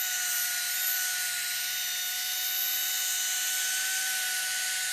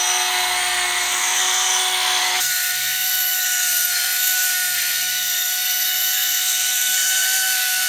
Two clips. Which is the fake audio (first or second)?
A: second